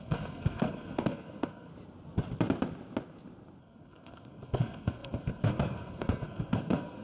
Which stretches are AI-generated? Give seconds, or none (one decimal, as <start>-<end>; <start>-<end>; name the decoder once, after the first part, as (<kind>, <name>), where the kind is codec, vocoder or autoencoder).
0.0-1.7 (codec, SNAC); 3.6-7.0